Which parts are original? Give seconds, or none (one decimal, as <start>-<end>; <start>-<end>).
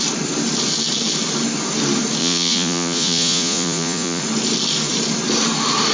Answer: 0.0-2.2; 4.2-5.9